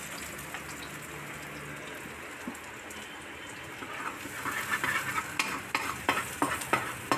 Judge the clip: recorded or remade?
recorded